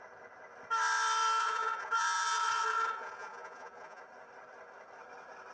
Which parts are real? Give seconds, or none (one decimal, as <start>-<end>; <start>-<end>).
0.0-1.4; 4.0-5.5